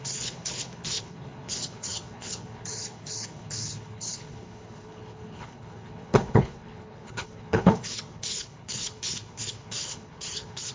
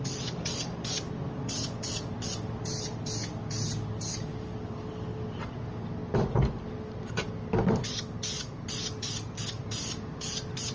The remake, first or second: first